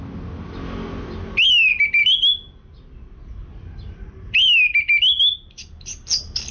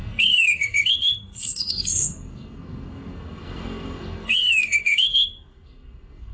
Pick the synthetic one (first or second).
second